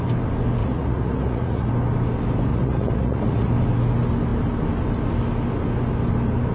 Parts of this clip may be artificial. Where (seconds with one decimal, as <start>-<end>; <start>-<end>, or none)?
0.6-1.7; 2.5-3.5